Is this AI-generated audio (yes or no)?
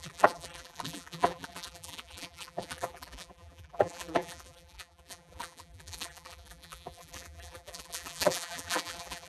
yes